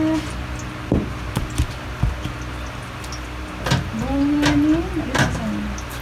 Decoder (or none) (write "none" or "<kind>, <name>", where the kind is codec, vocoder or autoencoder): none